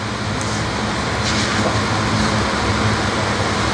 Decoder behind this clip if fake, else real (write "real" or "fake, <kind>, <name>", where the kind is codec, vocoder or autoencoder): real